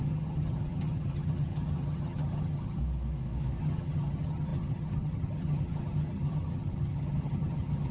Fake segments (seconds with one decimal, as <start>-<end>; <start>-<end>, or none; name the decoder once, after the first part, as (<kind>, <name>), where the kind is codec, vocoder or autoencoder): 0.0-2.8 (vocoder, HiFi-GAN); 3.6-7.9